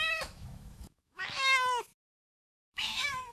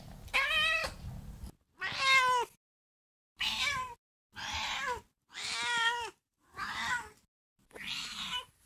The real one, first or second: second